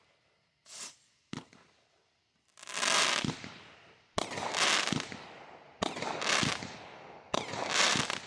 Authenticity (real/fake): real